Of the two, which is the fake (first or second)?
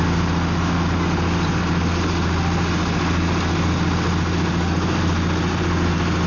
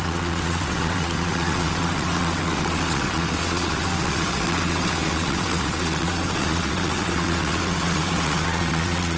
second